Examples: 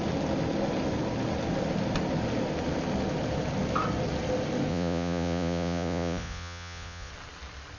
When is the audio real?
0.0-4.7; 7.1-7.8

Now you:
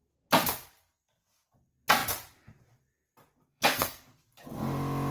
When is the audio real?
0.0-3.5; 4.2-5.1

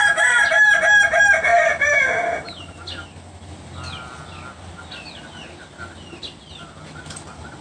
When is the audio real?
0.0-7.6